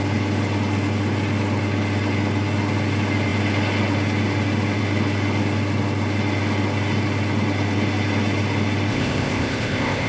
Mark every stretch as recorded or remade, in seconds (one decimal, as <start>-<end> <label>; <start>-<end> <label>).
0.0-8.9 recorded; 8.9-10.1 remade